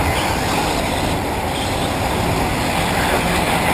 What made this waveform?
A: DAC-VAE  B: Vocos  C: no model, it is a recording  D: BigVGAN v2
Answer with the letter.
C